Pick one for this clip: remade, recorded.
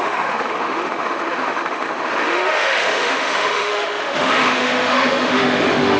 remade